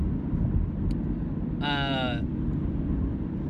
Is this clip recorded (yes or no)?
yes